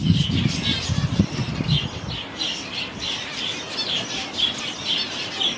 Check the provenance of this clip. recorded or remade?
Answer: recorded